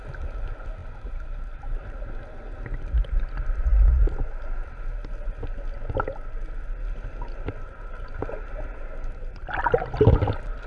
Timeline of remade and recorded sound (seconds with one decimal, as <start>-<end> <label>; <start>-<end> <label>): 0.0-0.8 recorded; 0.8-2.1 remade; 2.1-10.7 recorded